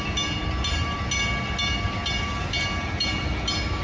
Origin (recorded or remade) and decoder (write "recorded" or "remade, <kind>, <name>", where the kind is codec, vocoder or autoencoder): recorded